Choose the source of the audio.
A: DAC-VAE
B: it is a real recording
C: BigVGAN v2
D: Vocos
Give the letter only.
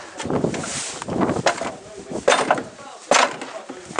B